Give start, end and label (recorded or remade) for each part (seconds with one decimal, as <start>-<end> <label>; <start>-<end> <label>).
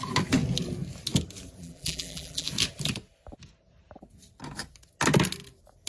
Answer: 0.0-1.6 recorded; 1.6-2.5 remade; 2.5-5.9 recorded